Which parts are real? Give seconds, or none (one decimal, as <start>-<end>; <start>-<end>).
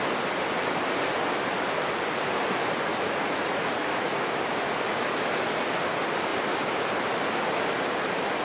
0.0-2.9; 4.2-8.4